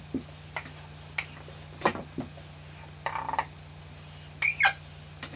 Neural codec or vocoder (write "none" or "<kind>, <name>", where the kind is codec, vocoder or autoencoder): none